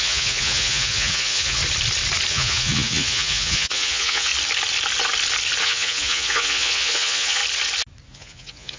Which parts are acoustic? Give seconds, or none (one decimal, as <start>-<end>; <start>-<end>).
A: 1.6-2.3; 4.3-5.6; 7.4-8.1